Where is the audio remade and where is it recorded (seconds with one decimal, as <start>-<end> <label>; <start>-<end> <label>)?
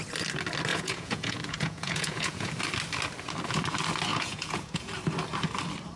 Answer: 0.0-0.7 recorded; 0.7-2.5 remade; 2.5-4.1 recorded; 4.1-4.9 remade; 4.9-6.0 recorded